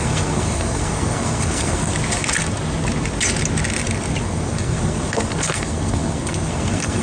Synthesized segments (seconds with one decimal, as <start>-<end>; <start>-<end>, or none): 0.0-1.9; 4.2-7.0